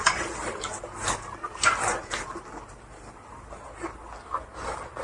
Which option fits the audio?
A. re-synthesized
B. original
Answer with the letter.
B